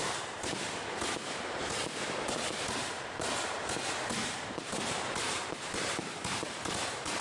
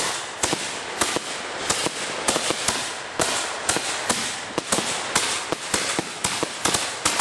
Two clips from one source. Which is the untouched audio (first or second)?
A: second